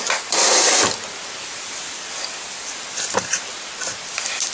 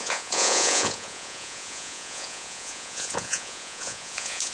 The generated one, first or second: second